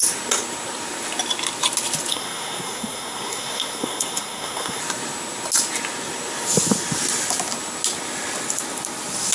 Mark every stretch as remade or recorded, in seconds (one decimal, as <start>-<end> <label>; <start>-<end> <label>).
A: 0.0-2.1 recorded; 2.1-4.8 remade; 4.8-9.3 recorded